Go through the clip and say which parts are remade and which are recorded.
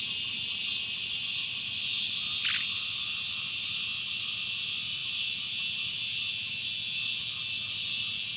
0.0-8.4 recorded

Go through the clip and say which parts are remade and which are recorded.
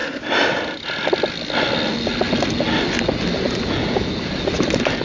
0.0-5.0 recorded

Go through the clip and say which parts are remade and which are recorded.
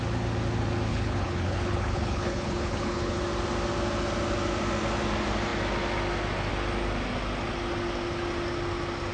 0.0-0.9 recorded; 0.9-3.2 remade; 3.2-9.1 recorded